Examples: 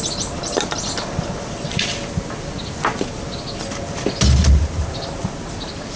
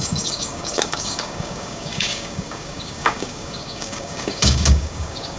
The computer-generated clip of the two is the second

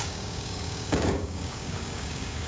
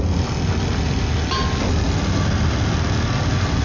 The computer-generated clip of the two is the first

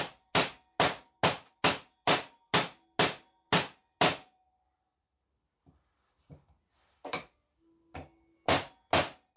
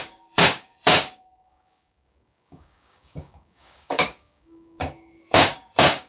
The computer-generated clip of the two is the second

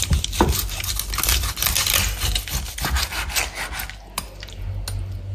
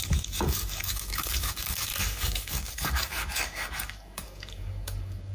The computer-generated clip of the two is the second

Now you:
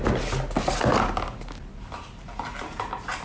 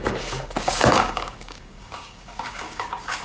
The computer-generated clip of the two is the second